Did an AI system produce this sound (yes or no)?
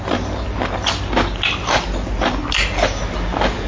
no